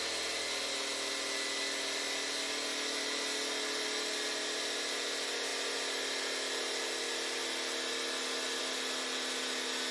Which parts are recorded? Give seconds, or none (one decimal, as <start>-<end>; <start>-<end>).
0.0-9.9